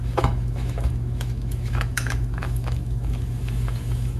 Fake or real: fake